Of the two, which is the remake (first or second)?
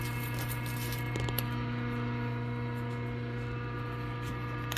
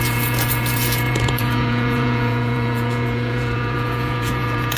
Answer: second